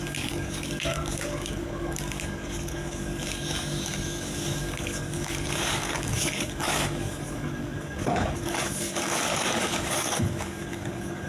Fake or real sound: fake